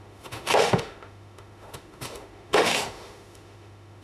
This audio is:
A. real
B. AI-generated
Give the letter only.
B